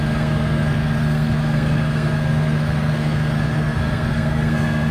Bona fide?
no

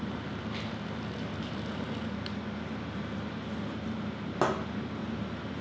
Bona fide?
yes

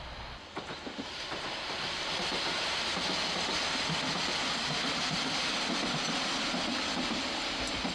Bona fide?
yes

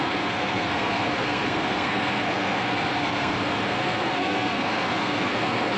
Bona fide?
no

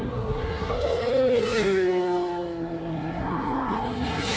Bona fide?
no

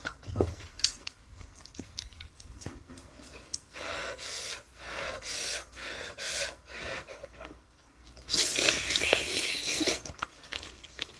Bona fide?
no